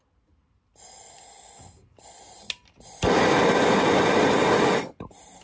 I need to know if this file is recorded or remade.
recorded